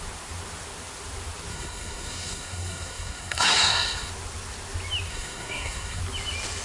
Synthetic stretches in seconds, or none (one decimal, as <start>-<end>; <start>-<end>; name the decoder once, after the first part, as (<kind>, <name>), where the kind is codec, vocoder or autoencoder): 1.5-4.1 (codec, SNAC); 5.1-6.0